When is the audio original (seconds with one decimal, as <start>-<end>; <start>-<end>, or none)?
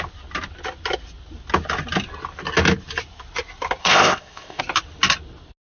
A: 0.0-3.8; 4.6-5.8